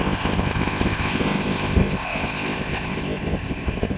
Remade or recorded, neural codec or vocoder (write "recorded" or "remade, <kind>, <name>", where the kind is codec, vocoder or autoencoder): remade, codec, ZipCodec